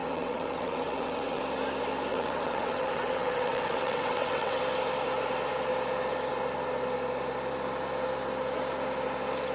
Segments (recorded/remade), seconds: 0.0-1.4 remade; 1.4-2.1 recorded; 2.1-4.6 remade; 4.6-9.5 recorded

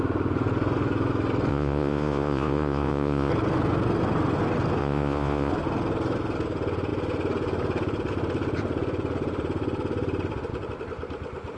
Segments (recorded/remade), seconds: 0.0-1.5 recorded; 1.5-3.3 remade; 3.3-4.8 recorded; 4.8-5.5 remade; 5.5-11.6 recorded

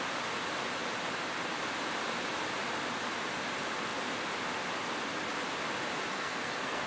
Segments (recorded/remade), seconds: 0.0-6.1 recorded; 6.1-6.9 remade

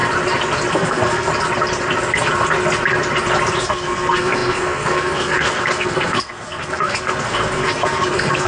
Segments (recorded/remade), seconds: 0.0-0.7 recorded; 0.7-1.3 remade; 1.3-3.6 recorded; 3.6-8.5 remade